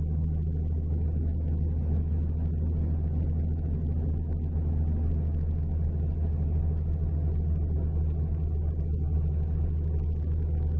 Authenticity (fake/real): real